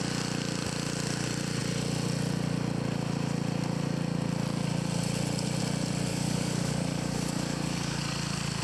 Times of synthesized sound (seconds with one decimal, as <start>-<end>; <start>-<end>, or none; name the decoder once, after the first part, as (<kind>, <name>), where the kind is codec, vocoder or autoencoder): 6.1-8.0 (codec, DAC)